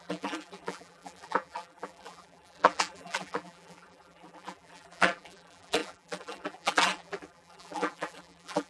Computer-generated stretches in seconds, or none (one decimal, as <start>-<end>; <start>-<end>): 0.0-8.7